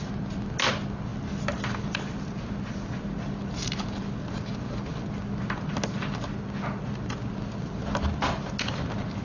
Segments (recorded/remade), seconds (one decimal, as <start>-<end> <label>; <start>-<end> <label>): 0.0-9.2 recorded